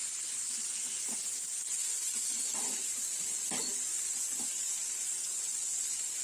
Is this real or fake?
real